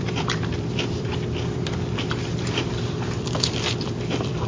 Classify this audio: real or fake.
fake